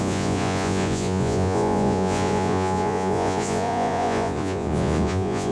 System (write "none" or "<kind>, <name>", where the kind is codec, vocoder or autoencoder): vocoder, Vocos